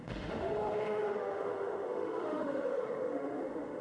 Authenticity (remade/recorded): remade